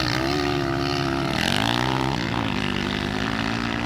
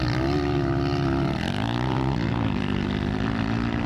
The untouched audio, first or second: first